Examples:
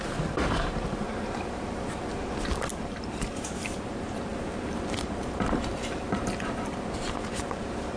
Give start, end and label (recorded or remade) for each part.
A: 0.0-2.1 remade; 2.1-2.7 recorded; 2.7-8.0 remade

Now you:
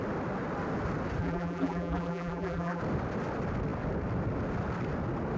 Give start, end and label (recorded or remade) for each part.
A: 0.0-1.2 recorded; 1.2-2.8 remade; 2.8-5.4 recorded

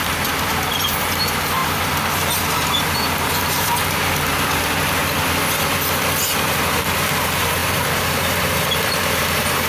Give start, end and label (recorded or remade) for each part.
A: 0.0-5.0 remade; 5.0-6.4 recorded; 6.4-9.7 remade

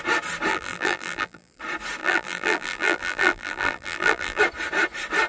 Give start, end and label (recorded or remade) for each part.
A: 0.0-0.5 recorded; 0.5-1.6 remade; 1.6-2.0 recorded; 2.0-4.4 remade; 4.4-5.3 recorded

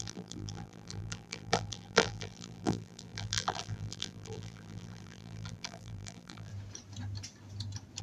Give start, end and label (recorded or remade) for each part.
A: 0.0-6.5 remade; 6.5-8.0 recorded

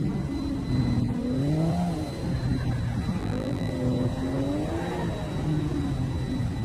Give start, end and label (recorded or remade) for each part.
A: 0.0-3.2 recorded; 3.2-3.7 remade; 3.7-6.6 recorded

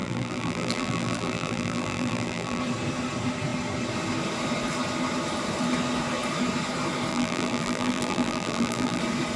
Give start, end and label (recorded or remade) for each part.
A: 0.0-2.6 remade; 2.6-7.1 recorded; 7.1-9.0 remade; 9.0-9.4 recorded